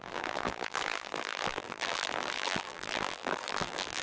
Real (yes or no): no